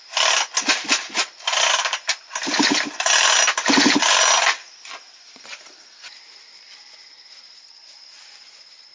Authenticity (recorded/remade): recorded